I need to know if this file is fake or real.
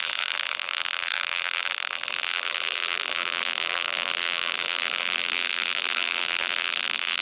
fake